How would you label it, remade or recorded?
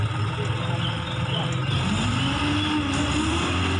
recorded